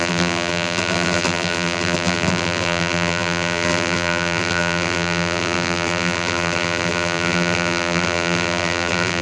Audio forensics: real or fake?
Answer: fake